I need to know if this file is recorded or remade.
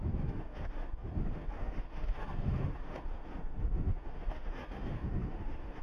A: remade